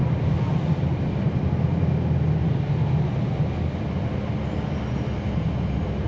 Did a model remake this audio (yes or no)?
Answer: no